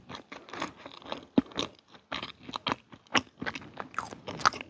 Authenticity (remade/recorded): recorded